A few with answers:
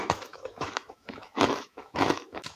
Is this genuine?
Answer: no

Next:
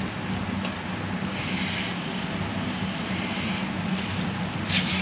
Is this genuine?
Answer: yes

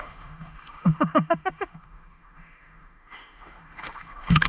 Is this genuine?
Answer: no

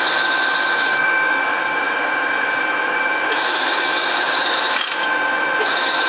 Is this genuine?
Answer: no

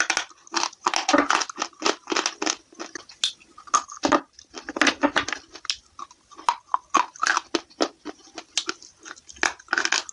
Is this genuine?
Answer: yes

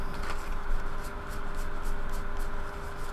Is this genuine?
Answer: yes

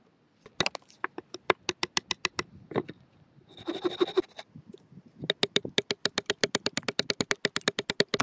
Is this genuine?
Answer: yes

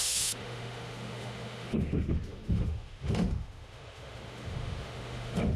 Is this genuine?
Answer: no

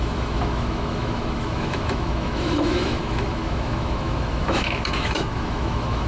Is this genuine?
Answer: no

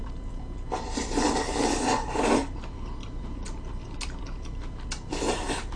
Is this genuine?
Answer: yes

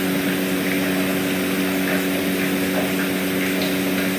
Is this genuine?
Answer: yes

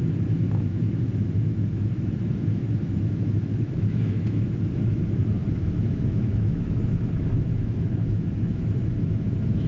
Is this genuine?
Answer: no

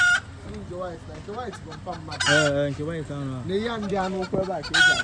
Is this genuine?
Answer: yes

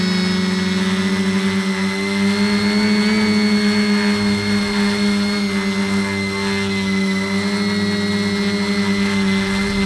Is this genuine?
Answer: yes